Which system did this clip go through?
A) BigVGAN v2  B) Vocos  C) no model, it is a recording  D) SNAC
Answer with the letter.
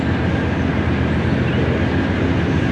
C